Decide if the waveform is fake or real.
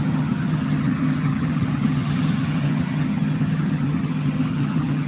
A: fake